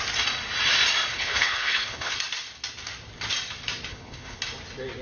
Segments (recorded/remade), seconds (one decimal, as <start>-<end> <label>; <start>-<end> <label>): 0.0-1.1 recorded; 1.1-2.1 remade; 2.1-3.9 recorded; 3.9-4.4 remade; 4.4-5.0 recorded